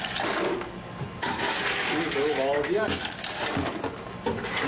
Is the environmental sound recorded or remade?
recorded